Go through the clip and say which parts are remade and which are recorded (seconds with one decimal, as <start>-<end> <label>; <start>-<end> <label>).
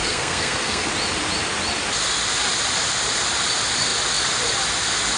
0.0-0.9 remade; 0.9-5.2 recorded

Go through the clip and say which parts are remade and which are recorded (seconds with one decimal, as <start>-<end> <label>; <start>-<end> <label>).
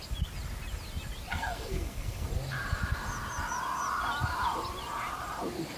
0.0-1.3 recorded; 1.3-2.3 remade; 2.3-5.8 recorded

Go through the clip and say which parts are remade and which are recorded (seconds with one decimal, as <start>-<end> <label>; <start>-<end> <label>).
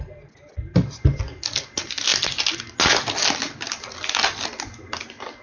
0.0-5.4 recorded